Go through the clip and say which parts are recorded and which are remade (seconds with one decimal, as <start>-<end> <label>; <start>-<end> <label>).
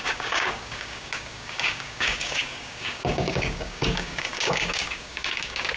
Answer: 0.0-5.8 remade